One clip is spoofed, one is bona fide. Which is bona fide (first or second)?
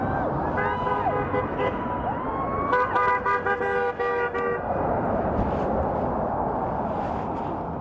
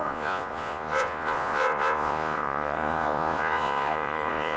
first